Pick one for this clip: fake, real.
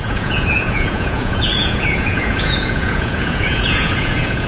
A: fake